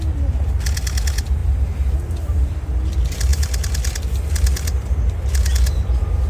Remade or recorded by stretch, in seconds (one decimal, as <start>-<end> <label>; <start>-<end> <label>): 0.0-6.3 recorded